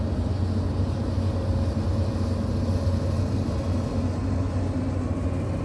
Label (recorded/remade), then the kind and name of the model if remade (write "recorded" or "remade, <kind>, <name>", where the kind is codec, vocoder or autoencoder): recorded